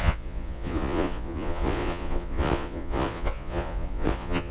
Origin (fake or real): fake